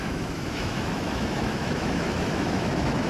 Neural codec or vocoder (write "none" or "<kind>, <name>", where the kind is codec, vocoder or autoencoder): autoencoder, DAC-VAE